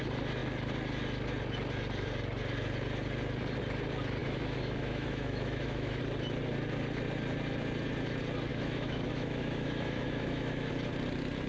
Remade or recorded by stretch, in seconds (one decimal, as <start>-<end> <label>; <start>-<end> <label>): 0.0-4.2 recorded; 4.2-6.0 remade; 6.0-8.5 recorded; 8.5-10.7 remade; 10.7-11.5 recorded